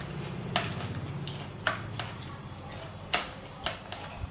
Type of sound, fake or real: real